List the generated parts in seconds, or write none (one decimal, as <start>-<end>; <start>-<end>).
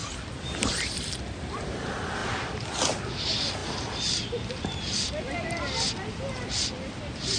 2.2-2.9; 3.6-7.4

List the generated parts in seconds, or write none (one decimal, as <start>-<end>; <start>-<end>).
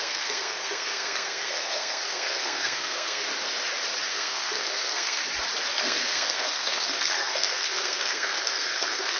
0.0-3.3; 4.1-5.2; 5.8-9.2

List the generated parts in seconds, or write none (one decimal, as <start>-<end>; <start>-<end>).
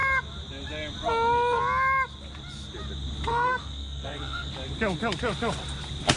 3.3-4.5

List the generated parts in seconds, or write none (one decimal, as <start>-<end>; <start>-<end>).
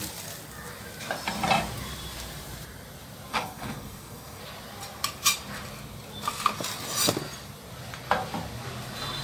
3.3-4.4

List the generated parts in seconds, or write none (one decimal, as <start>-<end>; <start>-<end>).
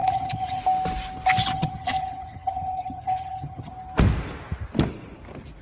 0.0-0.6; 1.4-3.7